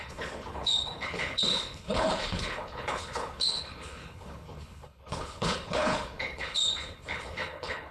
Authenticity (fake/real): fake